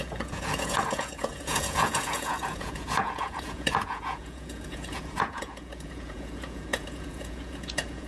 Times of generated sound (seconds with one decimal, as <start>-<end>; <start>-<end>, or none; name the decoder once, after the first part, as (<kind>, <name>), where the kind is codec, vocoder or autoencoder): 0.0-8.1 (vocoder, Vocos)